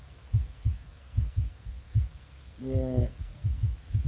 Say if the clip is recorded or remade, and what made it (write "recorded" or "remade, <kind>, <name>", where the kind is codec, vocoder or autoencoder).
remade, codec, SNAC